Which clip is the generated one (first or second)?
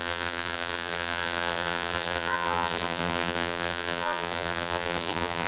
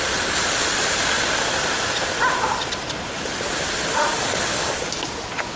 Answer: first